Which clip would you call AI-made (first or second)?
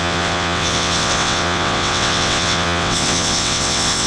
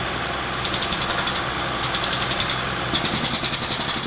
first